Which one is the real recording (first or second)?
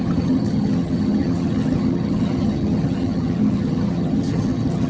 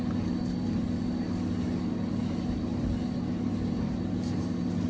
second